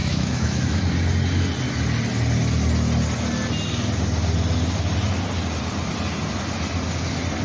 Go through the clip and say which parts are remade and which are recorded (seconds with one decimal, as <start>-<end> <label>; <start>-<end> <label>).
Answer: 0.0-0.8 remade; 0.8-7.4 recorded